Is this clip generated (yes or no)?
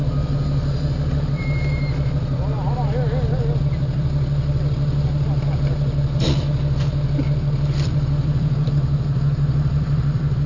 yes